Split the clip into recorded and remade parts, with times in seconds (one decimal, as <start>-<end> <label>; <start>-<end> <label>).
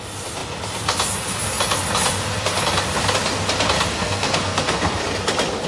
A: 0.0-3.9 recorded; 3.9-5.0 remade; 5.0-5.7 recorded